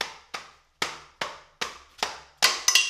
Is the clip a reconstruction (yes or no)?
no